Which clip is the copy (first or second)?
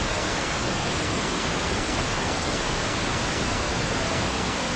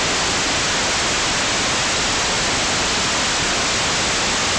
first